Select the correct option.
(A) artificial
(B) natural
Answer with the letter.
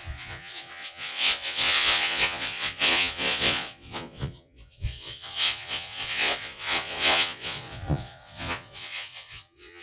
A